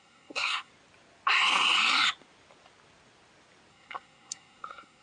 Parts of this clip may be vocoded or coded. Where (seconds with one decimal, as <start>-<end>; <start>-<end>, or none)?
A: 0.0-0.7; 3.7-5.0